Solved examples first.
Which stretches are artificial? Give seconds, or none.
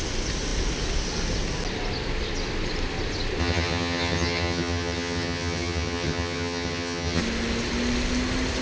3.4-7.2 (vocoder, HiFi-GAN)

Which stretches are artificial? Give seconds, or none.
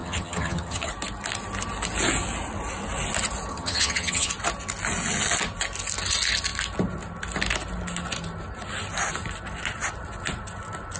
0.0-0.9 (vocoder, HiFi-GAN); 3.5-4.3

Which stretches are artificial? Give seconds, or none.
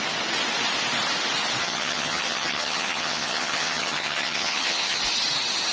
1.6-5.0 (vocoder, HiFi-GAN)